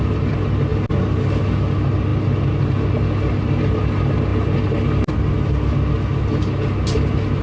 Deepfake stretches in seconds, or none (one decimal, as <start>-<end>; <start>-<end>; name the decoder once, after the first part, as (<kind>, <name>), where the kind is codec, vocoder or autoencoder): none